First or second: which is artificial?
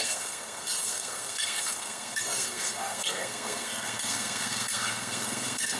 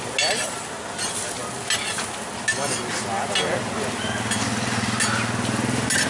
first